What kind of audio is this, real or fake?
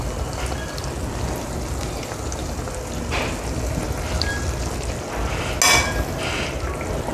real